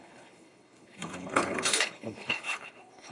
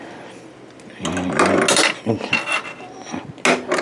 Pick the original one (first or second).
second